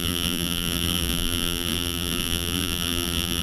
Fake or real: fake